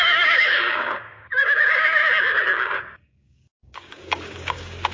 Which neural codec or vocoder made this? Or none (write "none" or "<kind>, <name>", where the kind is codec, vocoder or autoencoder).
codec, DAC